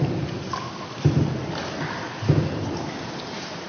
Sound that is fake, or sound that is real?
real